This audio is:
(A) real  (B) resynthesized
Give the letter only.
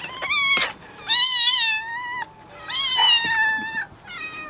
A